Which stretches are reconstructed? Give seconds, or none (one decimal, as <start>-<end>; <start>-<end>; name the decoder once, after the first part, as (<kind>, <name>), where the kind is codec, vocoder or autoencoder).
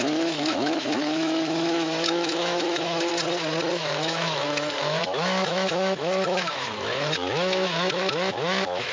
0.0-3.1 (autoencoder, DAC-VAE); 3.7-8.9